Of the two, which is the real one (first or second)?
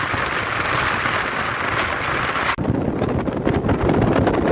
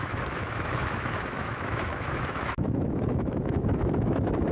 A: first